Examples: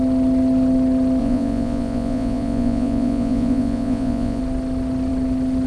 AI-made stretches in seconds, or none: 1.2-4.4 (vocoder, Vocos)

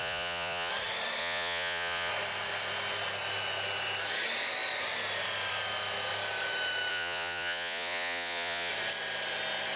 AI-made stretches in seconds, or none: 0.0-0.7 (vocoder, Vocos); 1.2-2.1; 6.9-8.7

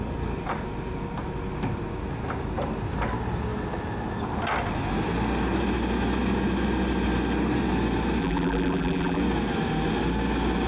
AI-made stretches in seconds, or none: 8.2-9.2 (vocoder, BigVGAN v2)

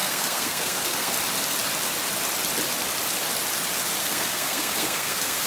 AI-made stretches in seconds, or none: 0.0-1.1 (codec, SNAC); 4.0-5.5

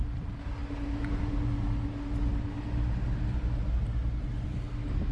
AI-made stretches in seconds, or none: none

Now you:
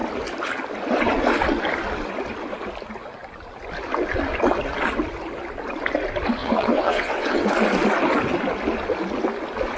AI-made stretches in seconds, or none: 6.4-7.5 (vocoder, WaveNeXt)

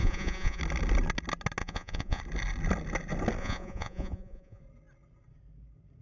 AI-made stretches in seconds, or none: 0.0-0.6 (vocoder, Vocos); 1.6-2.2; 3.4-4.6